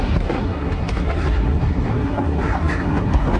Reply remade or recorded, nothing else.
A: remade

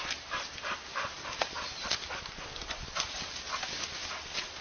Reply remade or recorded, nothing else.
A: recorded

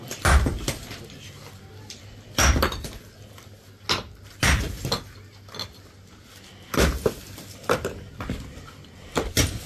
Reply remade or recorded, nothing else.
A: recorded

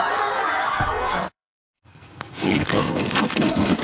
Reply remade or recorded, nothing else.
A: remade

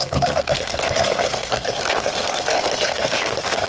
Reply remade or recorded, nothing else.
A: remade